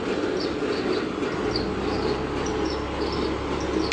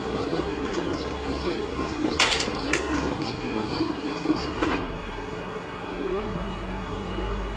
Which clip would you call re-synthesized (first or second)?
second